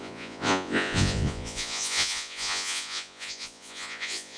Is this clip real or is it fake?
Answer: fake